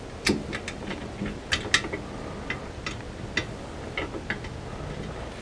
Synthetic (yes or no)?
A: no